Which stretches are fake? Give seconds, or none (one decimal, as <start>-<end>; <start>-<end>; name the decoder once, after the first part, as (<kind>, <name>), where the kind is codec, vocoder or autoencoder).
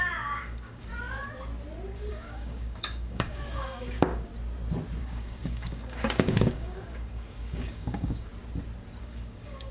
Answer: 0.0-0.9 (codec, DAC); 2.1-4.3; 5.0-8.3; 9.0-9.7